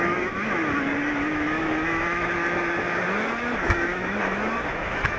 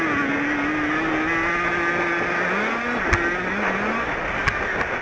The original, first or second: second